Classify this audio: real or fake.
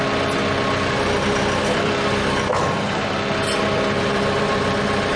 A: real